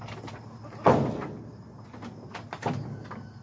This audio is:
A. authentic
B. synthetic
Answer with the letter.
A